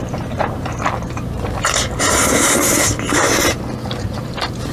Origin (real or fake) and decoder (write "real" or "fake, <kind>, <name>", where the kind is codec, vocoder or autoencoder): fake, vocoder, BigVGAN v2